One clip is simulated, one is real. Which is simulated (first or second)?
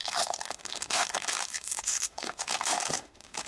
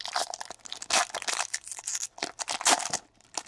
first